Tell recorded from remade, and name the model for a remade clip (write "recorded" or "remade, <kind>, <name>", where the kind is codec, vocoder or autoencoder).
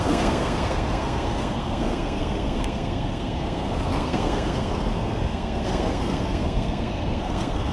remade, codec, SNAC